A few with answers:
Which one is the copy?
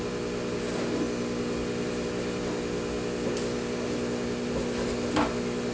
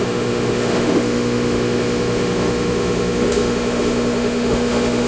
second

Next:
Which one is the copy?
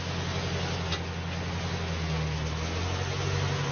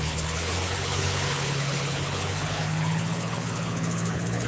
second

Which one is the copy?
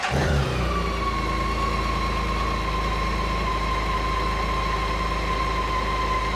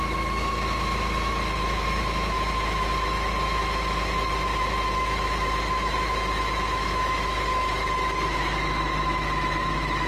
second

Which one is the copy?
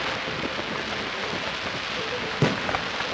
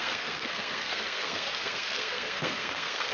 second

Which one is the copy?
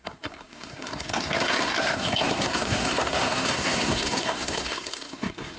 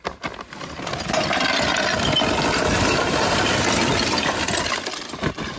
first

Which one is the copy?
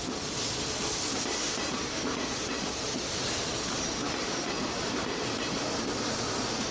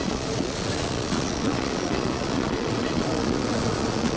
second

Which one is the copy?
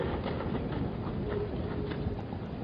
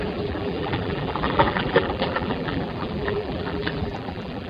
second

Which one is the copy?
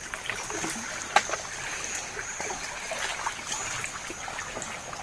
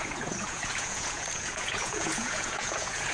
second